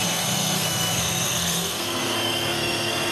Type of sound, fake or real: fake